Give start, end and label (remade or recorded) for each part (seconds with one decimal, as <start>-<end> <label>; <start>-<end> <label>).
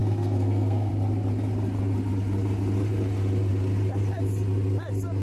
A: 0.0-0.9 remade; 0.9-5.2 recorded